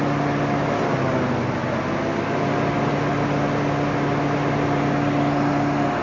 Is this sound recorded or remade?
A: recorded